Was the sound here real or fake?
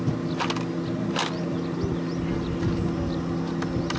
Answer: real